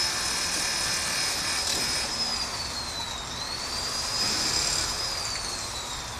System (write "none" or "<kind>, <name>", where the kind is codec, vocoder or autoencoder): none